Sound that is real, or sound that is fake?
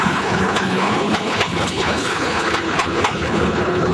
fake